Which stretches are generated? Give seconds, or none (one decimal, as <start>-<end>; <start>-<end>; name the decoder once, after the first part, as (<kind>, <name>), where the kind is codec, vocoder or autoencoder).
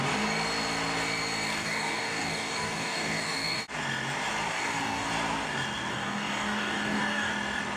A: 1.5-3.6 (codec, DAC); 4.5-5.1; 5.9-7.3